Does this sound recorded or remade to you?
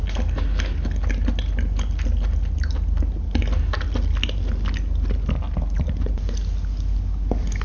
recorded